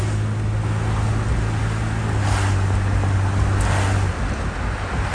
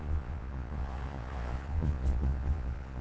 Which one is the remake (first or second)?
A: second